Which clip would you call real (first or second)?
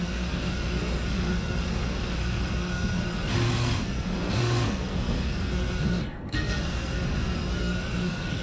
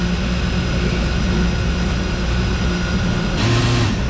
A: second